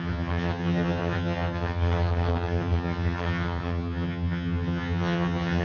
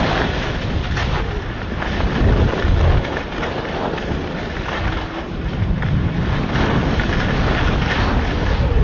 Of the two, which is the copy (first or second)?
first